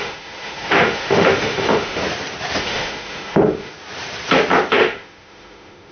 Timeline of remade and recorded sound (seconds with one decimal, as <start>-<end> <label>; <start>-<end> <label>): 0.0-2.0 remade; 2.0-2.6 recorded; 2.6-3.7 remade; 3.7-4.7 recorded; 4.7-5.9 remade